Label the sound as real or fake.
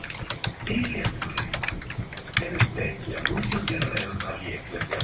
real